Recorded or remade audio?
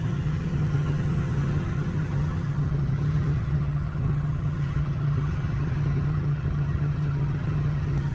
remade